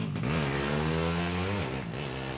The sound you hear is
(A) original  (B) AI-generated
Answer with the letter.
A